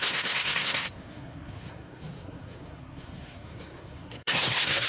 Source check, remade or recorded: remade